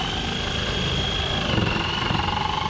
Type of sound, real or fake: real